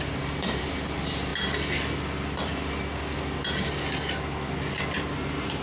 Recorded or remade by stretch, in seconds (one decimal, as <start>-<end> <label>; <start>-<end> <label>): 0.0-1.3 remade; 1.3-4.7 recorded; 4.7-5.6 remade